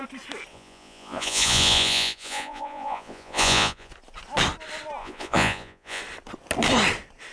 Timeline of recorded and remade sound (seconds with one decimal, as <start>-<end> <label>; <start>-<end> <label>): 0.0-0.5 recorded; 0.5-3.9 remade; 3.9-5.0 recorded; 5.0-6.0 remade; 6.0-7.3 recorded